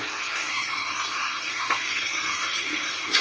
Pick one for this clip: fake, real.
fake